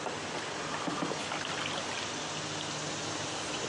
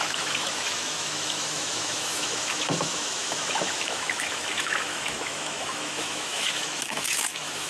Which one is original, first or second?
first